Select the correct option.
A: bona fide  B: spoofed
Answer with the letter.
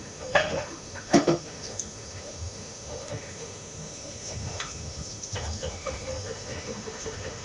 B